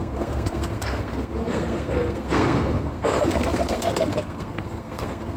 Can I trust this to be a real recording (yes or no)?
no